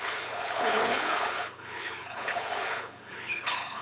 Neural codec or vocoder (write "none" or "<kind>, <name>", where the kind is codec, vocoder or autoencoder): codec, HILCodec